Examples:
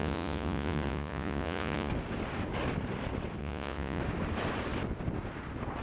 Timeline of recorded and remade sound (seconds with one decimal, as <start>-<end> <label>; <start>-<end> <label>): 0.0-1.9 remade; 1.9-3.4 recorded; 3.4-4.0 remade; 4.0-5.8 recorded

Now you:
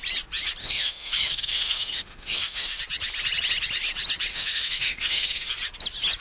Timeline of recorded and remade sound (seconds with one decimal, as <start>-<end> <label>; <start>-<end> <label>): 0.0-0.6 recorded; 0.6-2.8 remade; 2.8-4.3 recorded; 4.3-5.5 remade; 5.5-6.2 recorded

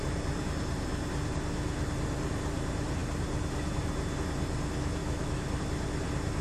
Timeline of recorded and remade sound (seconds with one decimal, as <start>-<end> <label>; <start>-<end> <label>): 0.0-5.0 recorded; 5.0-5.6 remade; 5.6-6.4 recorded

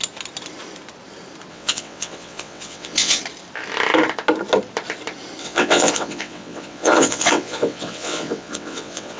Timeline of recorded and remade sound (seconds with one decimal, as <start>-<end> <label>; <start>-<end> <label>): 0.0-1.5 recorded; 1.5-3.2 remade; 3.2-5.4 recorded; 5.4-9.2 remade